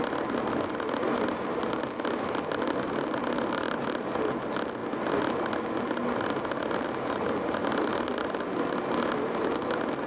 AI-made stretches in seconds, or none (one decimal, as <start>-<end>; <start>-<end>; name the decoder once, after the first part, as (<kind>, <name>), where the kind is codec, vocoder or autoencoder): none